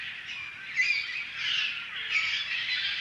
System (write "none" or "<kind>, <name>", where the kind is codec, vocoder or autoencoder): none